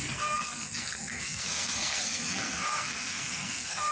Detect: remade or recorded remade